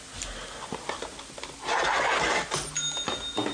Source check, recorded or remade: recorded